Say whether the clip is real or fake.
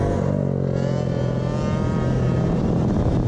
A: real